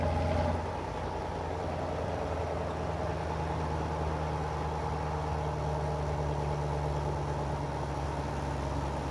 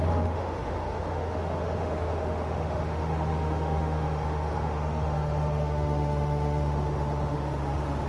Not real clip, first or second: second